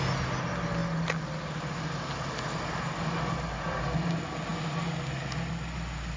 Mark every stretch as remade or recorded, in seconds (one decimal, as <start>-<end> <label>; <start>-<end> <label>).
0.0-6.2 recorded